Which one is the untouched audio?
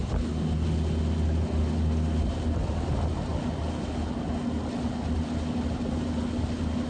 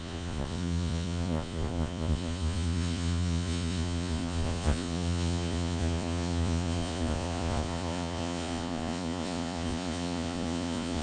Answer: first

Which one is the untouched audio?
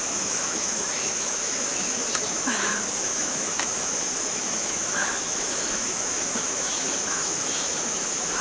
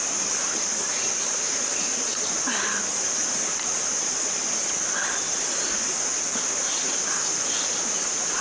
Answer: second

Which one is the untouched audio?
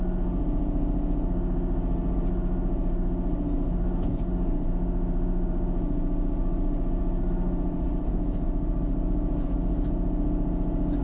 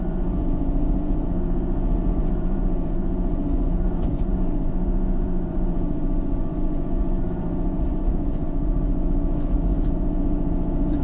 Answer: first